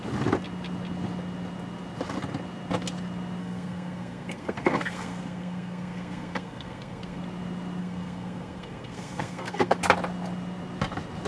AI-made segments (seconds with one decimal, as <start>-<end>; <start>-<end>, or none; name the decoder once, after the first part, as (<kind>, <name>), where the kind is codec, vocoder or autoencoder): 3.4-7.2 (codec, SNAC); 7.8-9.8